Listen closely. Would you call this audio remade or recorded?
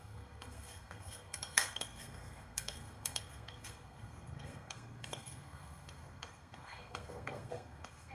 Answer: remade